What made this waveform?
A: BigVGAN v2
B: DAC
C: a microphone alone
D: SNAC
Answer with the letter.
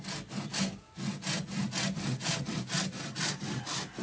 C